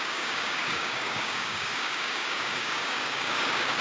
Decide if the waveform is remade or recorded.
remade